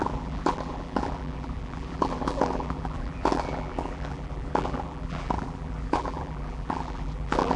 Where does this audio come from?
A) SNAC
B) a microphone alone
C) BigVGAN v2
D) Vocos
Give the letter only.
C